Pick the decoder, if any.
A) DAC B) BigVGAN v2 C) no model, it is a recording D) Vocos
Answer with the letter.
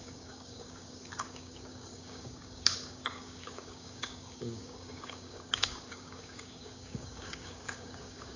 A